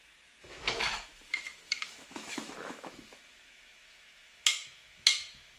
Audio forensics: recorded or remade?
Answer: remade